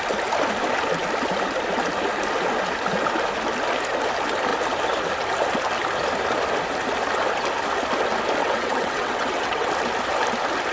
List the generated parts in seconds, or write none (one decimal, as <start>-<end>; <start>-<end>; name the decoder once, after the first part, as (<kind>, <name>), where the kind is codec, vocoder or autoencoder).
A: 8.4-9.7 (vocoder, WaveNeXt)